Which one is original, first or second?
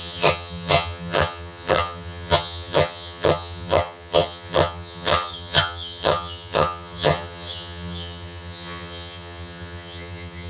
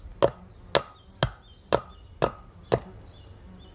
second